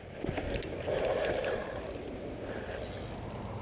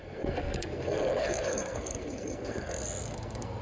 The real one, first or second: first